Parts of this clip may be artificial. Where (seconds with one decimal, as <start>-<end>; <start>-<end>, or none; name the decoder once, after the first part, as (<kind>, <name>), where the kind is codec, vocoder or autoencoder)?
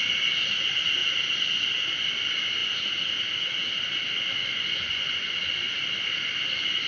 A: 4.4-5.3 (vocoder, Vocos)